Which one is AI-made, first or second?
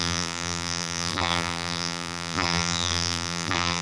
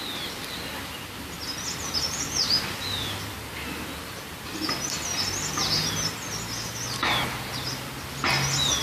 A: first